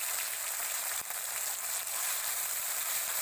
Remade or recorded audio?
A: remade